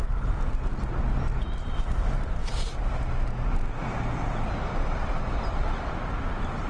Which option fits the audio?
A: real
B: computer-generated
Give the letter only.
A